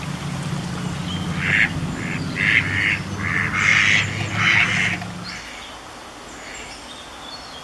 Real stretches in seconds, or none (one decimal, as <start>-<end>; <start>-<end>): 0.0-7.6